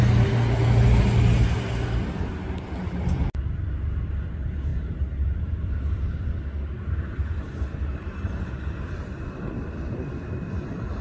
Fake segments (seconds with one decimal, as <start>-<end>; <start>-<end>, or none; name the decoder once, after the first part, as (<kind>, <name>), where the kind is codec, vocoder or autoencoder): 4.7-5.7 (vocoder, BigVGAN v2)